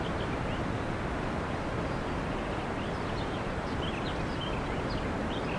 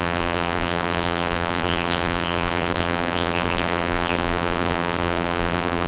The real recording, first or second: first